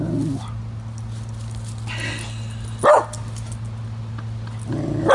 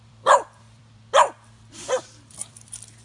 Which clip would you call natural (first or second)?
first